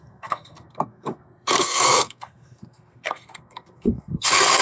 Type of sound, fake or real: fake